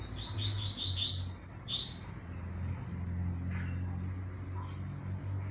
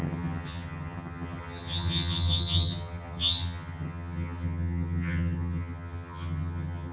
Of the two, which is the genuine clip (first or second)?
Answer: first